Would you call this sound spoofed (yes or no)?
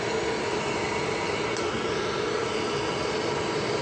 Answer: no